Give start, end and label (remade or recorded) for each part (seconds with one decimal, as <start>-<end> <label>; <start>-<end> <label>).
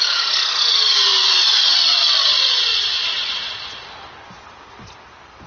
0.0-5.5 recorded